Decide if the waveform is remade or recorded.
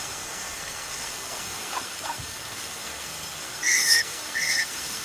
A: remade